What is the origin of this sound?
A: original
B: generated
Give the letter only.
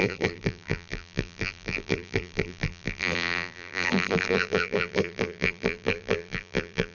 B